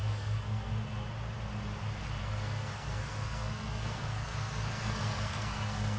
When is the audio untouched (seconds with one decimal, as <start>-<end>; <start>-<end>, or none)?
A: 0.7-2.2